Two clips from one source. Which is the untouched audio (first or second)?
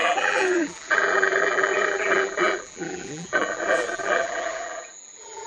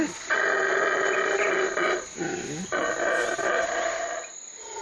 second